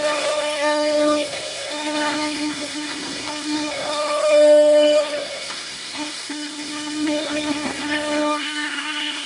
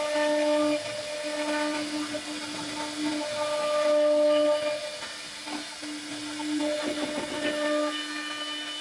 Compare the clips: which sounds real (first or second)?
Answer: second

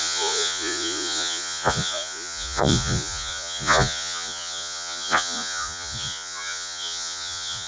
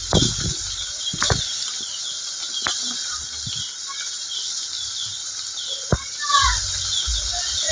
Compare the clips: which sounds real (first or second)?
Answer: second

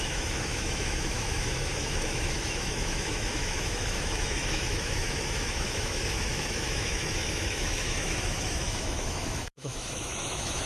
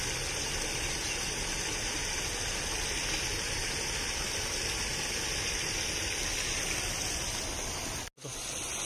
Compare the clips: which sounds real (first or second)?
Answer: second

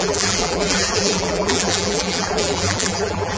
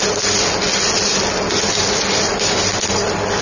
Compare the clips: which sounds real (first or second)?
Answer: second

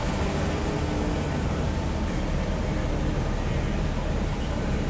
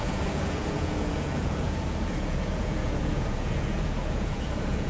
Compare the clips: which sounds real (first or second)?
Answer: first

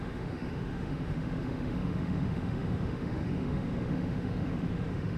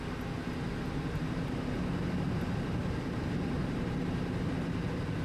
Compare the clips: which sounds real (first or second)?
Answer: second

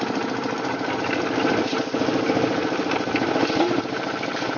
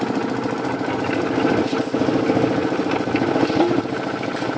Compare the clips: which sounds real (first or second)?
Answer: second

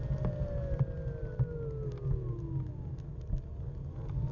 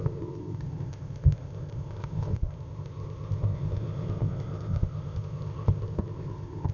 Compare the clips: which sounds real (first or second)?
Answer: first